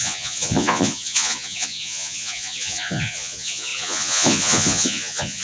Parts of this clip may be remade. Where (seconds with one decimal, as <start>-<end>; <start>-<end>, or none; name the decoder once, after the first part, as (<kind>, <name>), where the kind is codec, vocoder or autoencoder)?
0.0-5.4 (vocoder, Vocos)